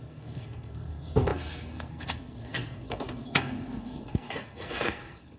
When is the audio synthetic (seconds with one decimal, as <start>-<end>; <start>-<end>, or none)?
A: 0.0-5.4